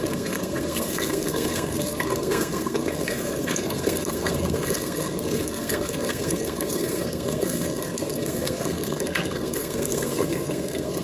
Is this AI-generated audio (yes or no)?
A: yes